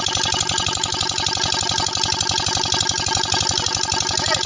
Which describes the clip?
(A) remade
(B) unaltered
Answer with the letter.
B